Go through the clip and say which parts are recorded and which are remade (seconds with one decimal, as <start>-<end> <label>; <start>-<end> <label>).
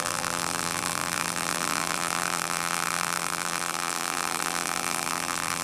0.0-5.6 remade